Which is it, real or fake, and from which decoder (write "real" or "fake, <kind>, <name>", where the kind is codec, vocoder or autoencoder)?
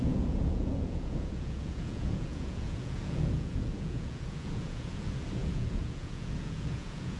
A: fake, vocoder, Vocos